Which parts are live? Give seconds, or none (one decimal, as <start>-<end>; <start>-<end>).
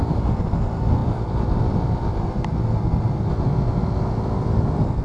0.0-5.0